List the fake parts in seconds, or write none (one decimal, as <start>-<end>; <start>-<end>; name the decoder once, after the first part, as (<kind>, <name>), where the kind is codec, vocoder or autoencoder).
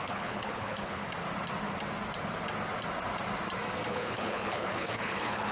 0.0-1.0 (codec, HILCodec); 3.9-5.5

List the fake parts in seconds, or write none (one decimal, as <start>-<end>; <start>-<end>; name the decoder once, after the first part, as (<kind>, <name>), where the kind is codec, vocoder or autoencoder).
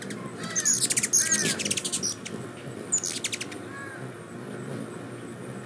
none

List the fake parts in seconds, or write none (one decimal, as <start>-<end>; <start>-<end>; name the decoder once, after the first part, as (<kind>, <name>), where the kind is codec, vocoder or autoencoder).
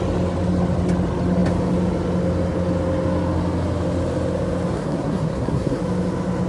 4.7-5.8 (codec, SNAC)